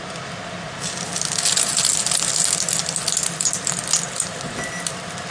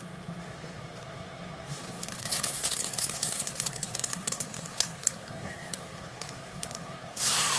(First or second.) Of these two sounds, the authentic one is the first